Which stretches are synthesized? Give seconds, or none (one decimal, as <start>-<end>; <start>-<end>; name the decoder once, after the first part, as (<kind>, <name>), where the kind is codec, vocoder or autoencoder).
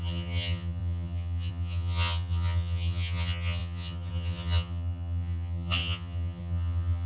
0.0-7.1 (vocoder, HiFi-GAN)